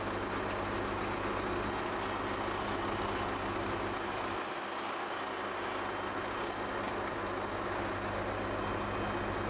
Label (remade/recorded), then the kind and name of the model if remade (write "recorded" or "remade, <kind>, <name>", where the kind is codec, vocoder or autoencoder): recorded